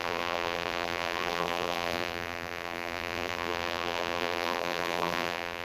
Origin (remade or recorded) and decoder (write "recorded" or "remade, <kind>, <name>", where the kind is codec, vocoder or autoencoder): remade, vocoder, BigVGAN v2